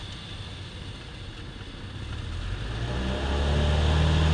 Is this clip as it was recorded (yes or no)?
yes